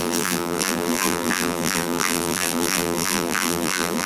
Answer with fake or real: fake